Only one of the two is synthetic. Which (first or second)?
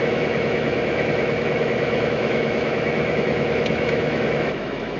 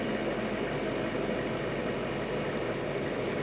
first